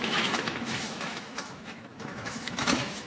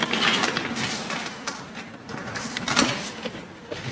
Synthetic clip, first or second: first